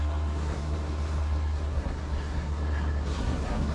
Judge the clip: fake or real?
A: fake